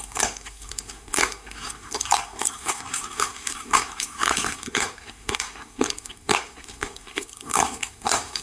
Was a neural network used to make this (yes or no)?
yes